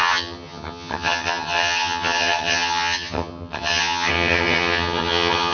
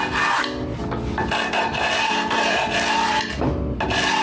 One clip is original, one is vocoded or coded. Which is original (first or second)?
second